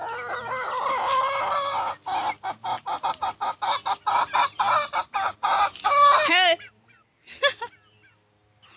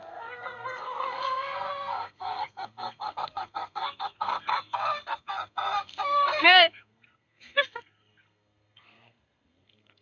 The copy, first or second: second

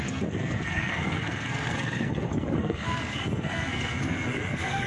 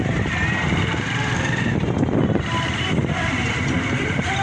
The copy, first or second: first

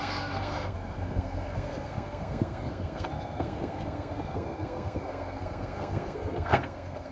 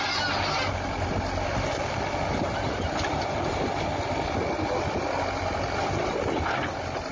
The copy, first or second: first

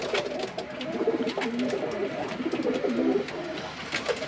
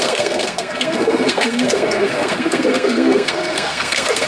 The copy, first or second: second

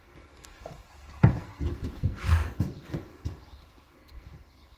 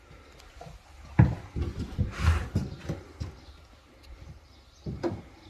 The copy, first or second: first